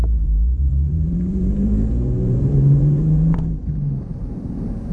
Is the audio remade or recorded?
remade